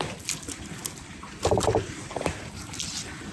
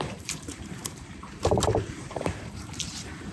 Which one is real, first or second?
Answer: first